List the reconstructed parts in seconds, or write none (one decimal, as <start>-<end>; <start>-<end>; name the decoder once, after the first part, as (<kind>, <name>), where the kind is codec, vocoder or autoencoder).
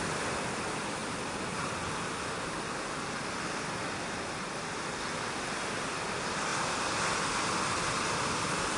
none